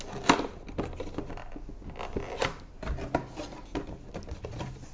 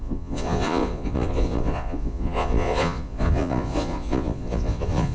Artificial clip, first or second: second